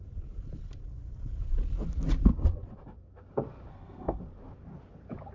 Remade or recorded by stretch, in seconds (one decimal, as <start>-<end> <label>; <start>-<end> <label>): 0.0-3.7 recorded; 3.7-4.2 remade; 4.2-5.3 recorded